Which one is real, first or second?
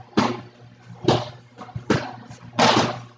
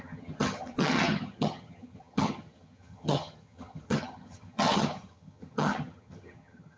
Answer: first